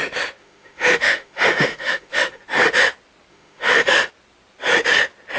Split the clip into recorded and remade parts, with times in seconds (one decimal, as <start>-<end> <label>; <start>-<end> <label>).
0.0-0.4 recorded; 0.4-2.4 remade; 2.4-3.3 recorded; 3.3-4.1 remade; 4.1-5.4 recorded